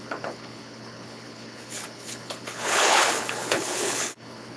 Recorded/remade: remade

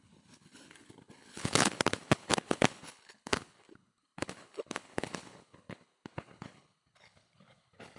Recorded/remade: remade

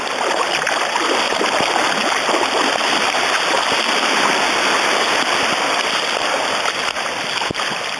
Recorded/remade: recorded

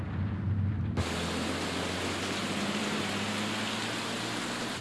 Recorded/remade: recorded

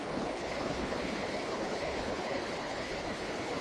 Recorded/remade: remade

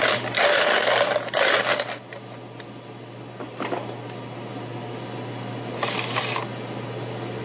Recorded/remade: recorded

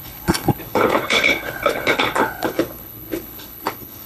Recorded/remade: remade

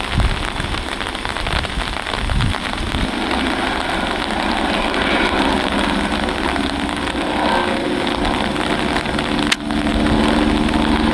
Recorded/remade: recorded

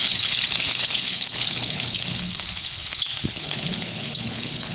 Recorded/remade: remade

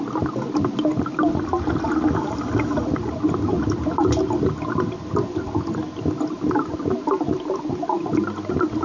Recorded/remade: recorded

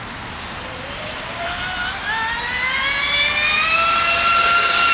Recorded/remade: recorded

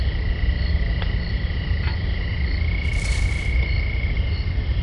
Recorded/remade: recorded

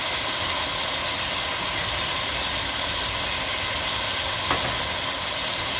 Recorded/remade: recorded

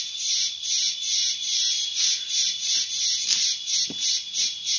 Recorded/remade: recorded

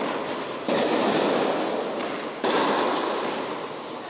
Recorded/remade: recorded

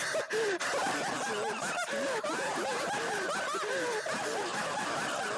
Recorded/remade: recorded